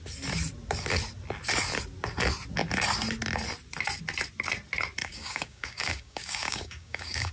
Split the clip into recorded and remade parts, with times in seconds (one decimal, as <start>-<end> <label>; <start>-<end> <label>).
0.0-5.0 recorded; 5.0-7.3 remade